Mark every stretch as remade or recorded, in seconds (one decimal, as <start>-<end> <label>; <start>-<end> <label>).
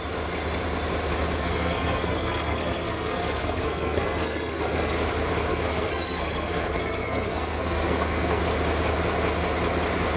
0.0-1.4 recorded; 1.4-5.0 remade; 5.0-5.5 recorded; 5.5-8.4 remade; 8.4-10.2 recorded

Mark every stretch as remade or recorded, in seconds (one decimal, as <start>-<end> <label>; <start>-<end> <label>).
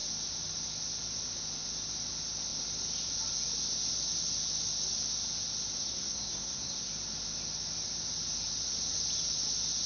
0.0-5.8 recorded; 5.8-6.9 remade; 6.9-9.9 recorded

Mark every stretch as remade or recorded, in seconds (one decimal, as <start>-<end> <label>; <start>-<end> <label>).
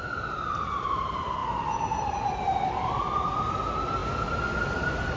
0.0-5.2 recorded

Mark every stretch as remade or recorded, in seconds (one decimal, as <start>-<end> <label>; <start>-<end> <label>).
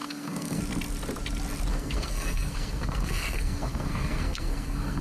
0.0-0.6 remade; 0.6-1.7 recorded; 1.7-5.0 remade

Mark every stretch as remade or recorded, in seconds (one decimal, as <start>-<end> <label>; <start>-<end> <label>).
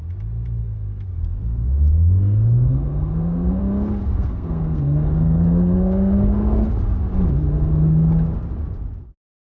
0.0-0.6 recorded; 0.6-3.6 remade; 3.6-4.0 recorded; 4.0-6.7 remade; 6.7-9.4 recorded